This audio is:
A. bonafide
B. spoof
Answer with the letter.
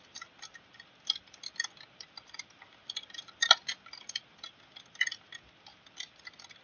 A